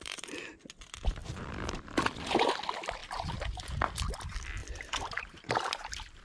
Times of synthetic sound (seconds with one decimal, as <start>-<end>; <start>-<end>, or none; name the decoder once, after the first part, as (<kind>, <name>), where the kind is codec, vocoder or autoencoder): 0.0-0.5 (vocoder, BigVGAN v2); 1.2-1.8; 3.0-3.6; 4.6-5.4